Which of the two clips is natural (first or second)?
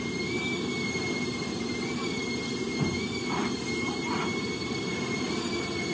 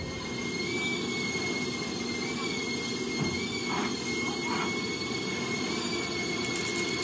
second